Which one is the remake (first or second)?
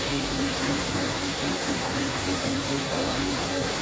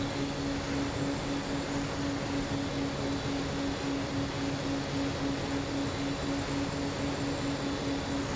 first